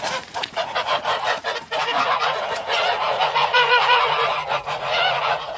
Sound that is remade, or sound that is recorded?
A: remade